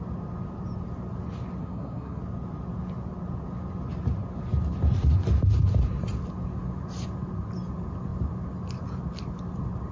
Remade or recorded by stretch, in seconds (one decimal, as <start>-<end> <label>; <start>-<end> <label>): 0.0-1.6 recorded; 1.6-2.2 remade; 2.2-9.9 recorded